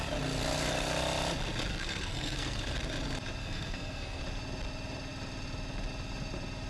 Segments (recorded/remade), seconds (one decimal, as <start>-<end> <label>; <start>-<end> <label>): 0.0-1.7 recorded; 1.7-2.6 remade; 2.6-3.4 recorded; 3.4-4.2 remade; 4.2-6.7 recorded